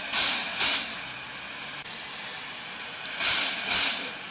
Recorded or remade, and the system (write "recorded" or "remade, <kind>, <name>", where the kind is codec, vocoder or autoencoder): recorded